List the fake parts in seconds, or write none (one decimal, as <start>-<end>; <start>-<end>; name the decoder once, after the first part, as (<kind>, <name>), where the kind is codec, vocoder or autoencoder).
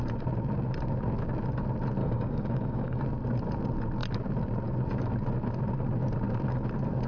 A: 2.0-3.0 (codec, DAC)